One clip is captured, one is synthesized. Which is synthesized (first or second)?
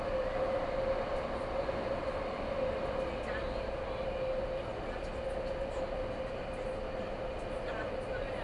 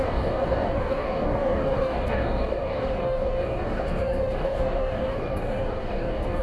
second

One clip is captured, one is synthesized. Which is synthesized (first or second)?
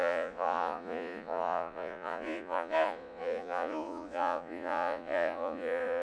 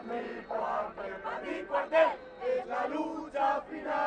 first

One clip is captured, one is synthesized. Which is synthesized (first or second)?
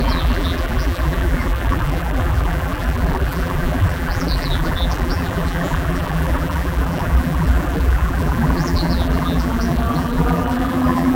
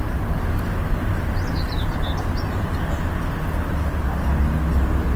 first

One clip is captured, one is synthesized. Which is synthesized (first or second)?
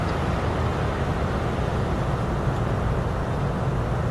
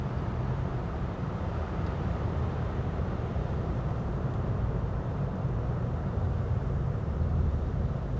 second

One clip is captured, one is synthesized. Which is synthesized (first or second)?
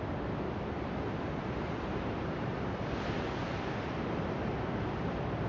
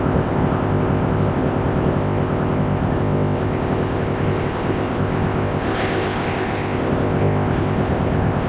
second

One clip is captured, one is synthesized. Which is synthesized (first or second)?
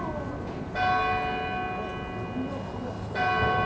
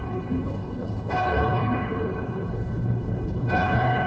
second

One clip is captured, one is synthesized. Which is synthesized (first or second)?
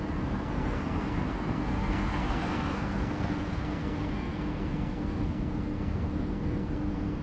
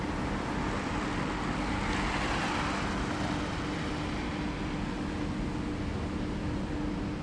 first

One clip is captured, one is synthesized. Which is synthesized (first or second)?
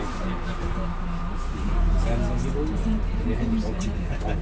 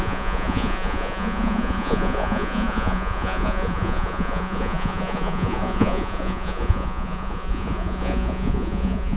second